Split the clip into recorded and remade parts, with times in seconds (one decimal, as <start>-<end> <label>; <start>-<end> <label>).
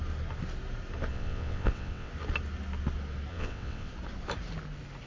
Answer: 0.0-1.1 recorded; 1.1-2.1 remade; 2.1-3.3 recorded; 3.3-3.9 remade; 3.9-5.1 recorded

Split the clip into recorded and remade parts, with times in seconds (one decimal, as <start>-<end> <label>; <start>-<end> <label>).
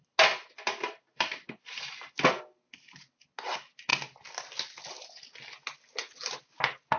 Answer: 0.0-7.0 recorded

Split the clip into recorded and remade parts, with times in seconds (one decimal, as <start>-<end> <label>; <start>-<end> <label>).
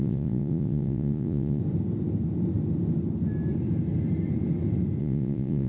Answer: 0.0-1.6 remade; 1.6-5.0 recorded; 5.0-5.7 remade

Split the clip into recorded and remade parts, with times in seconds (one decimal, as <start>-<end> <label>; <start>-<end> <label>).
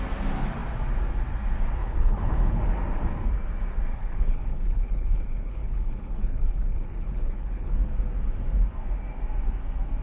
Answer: 0.0-1.8 recorded; 1.8-2.6 remade; 2.6-4.0 recorded; 4.0-7.7 remade; 7.7-10.0 recorded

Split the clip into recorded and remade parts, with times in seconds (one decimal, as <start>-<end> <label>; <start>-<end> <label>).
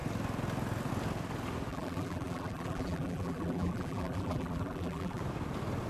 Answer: 0.0-1.7 recorded; 1.7-5.2 remade; 5.2-5.9 recorded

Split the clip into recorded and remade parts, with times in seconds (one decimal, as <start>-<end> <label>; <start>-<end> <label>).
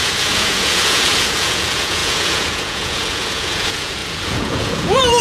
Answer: 0.0-5.2 remade